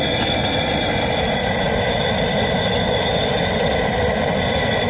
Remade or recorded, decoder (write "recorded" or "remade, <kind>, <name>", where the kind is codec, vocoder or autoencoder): recorded